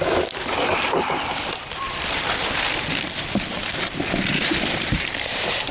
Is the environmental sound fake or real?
fake